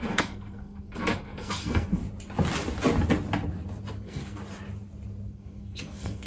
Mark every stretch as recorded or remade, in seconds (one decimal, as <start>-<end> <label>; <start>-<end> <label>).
0.0-2.0 remade; 2.0-3.9 recorded; 3.9-4.4 remade; 4.4-5.3 recorded; 5.3-6.3 remade